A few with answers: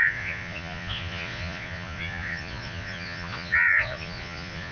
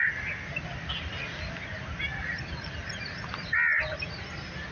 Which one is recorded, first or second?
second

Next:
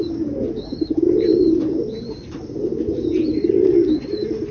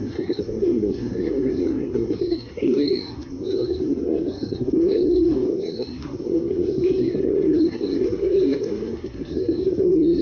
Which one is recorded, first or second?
first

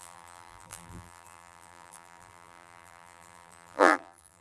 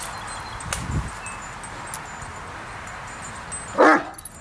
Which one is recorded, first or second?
second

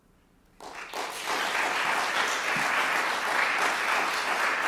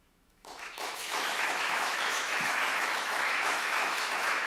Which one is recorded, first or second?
first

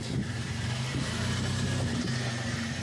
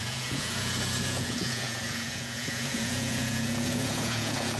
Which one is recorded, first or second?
first